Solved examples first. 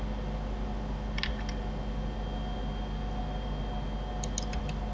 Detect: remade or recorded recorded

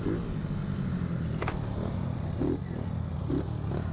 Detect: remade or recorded recorded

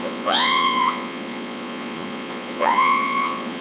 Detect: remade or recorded remade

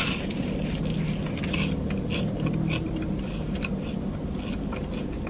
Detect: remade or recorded recorded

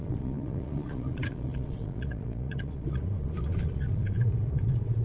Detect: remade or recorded remade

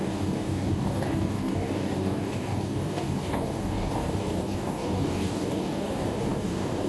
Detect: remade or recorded remade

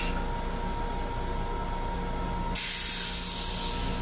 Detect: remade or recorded recorded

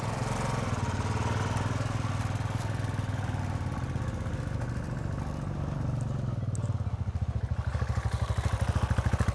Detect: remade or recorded recorded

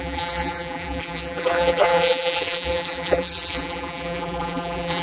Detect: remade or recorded remade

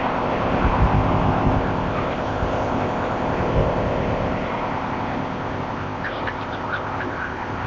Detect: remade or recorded remade